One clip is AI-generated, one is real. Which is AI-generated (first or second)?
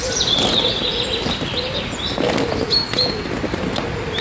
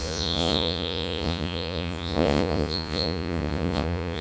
second